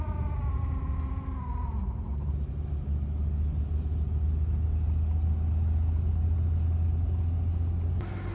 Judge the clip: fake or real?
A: real